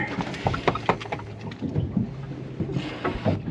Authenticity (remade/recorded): recorded